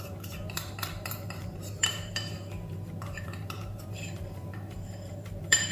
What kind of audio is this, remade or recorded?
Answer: remade